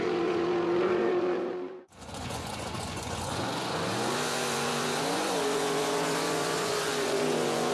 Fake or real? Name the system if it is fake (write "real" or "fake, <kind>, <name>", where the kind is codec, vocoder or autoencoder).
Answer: fake, vocoder, Vocos